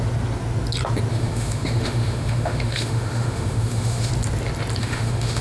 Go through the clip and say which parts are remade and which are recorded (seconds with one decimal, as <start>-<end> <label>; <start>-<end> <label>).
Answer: 0.0-1.1 recorded; 1.1-4.1 remade; 4.1-4.8 recorded; 4.8-5.4 remade